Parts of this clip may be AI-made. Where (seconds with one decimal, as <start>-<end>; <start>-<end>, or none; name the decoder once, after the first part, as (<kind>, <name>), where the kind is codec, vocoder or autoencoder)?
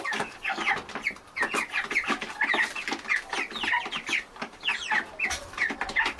0.0-0.6 (codec, DAC); 4.3-4.7